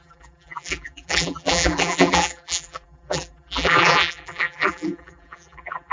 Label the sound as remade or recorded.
remade